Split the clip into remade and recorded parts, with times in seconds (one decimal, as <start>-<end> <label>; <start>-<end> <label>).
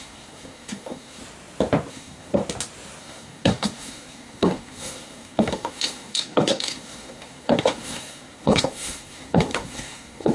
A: 0.0-1.2 remade; 1.2-1.9 recorded; 1.9-2.4 remade; 2.4-3.0 recorded; 3.0-10.3 remade